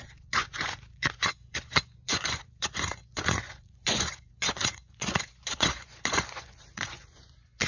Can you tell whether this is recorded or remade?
remade